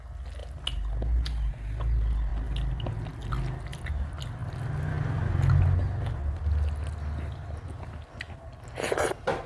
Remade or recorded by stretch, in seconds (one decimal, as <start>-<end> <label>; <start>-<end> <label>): 0.0-9.5 recorded